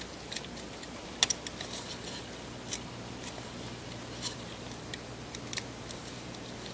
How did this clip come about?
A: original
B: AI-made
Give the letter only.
A